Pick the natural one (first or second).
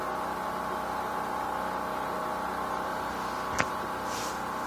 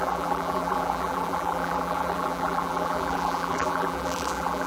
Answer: first